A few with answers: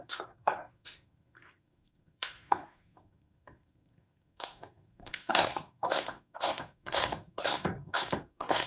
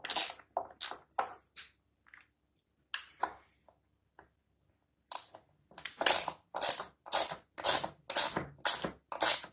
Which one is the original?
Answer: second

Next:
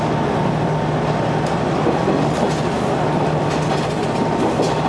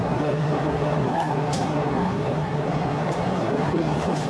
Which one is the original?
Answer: first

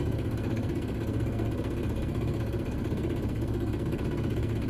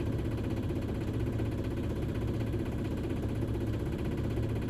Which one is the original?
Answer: second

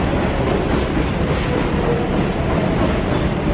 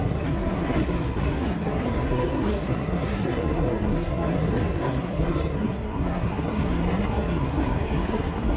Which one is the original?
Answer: first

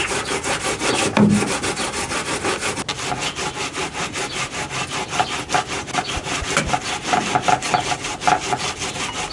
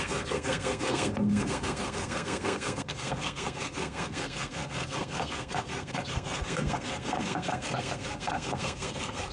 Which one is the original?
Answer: first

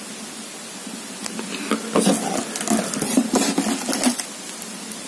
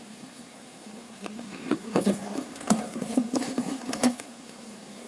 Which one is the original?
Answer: first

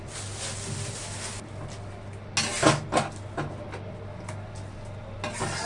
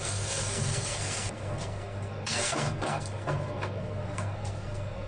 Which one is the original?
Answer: first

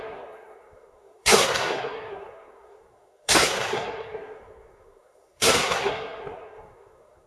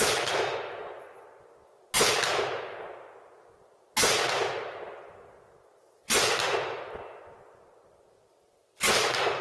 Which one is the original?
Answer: second